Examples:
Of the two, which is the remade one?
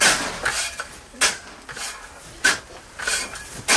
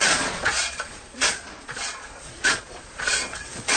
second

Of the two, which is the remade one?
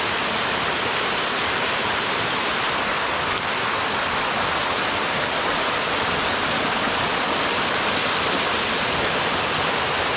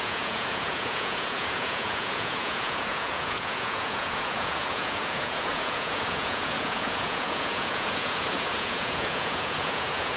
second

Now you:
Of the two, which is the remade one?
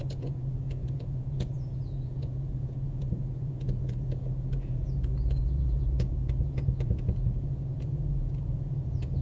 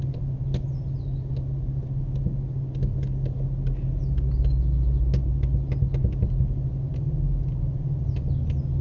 first